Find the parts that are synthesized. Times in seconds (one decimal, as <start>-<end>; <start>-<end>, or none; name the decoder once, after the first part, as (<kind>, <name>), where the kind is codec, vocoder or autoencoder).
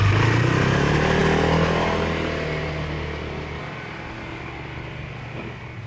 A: none